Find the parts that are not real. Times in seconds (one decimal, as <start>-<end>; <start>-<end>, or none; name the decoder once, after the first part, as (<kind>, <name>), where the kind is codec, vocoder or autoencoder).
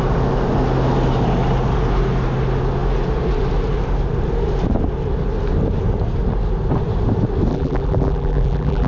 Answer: 7.5-8.9 (vocoder, BigVGAN v2)